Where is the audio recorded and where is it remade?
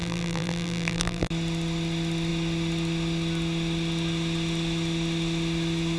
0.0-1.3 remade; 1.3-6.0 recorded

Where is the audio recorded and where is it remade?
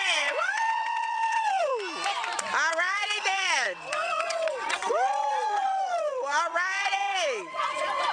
0.0-1.7 remade; 1.7-2.7 recorded; 2.7-8.1 remade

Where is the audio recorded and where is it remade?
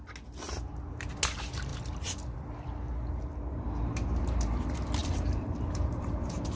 0.0-5.0 recorded; 5.0-6.6 remade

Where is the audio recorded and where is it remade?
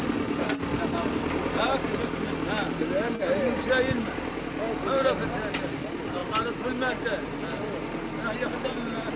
0.0-9.2 recorded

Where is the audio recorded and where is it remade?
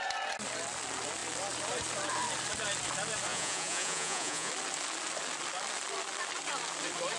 0.0-3.3 recorded; 3.3-4.5 remade; 4.5-7.2 recorded